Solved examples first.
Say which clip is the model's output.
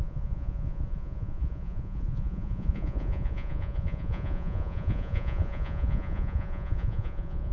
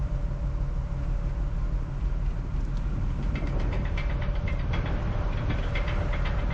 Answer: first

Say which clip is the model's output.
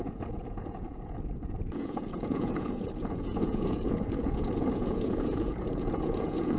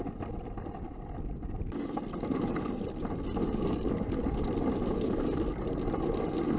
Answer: first